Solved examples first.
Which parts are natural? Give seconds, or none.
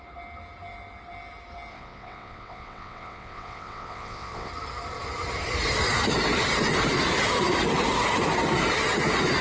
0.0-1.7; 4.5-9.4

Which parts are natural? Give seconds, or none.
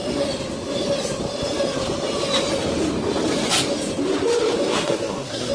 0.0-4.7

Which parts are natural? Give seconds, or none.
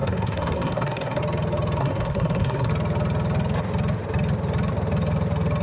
1.2-1.8; 2.7-5.6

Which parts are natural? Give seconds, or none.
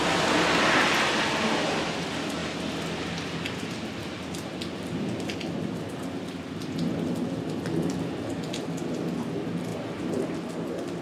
0.0-11.0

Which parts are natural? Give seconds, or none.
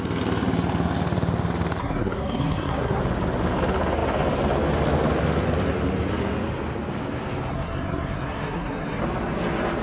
0.0-1.8; 3.0-7.5; 9.0-9.8